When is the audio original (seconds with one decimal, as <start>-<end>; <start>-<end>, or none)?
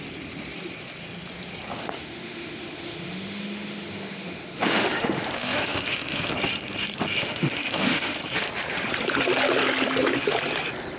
0.0-1.8; 6.3-7.2; 8.2-11.0